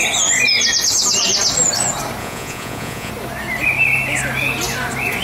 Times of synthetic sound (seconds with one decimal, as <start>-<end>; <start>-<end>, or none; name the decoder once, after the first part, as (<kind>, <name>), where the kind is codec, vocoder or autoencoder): 2.2-3.1 (vocoder, Vocos)